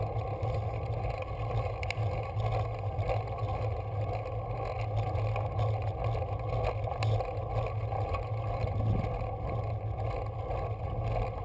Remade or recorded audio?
recorded